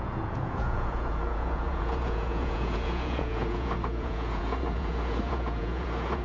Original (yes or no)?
no